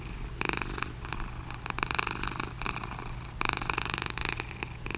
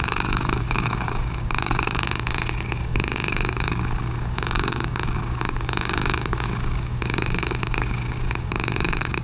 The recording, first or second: first